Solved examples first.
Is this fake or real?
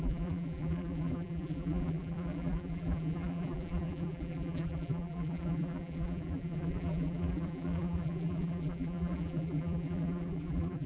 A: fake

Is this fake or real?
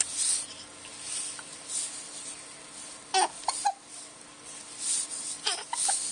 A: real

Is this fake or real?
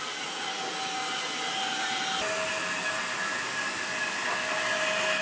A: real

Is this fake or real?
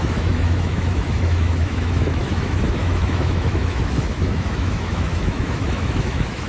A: fake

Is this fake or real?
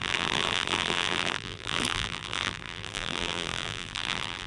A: fake